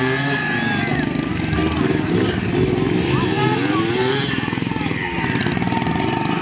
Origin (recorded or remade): recorded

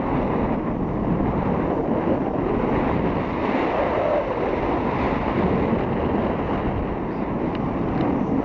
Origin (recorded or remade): recorded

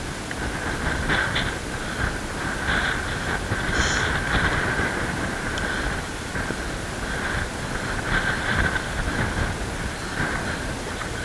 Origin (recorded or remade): recorded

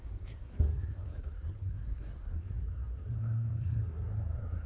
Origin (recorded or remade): remade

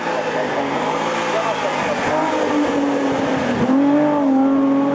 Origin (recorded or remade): recorded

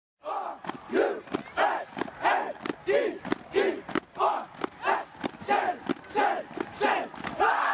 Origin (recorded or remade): recorded